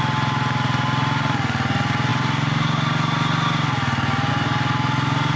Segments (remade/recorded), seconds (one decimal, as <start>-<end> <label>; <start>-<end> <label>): 0.0-5.4 recorded